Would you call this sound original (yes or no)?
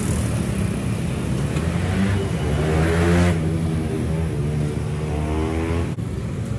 yes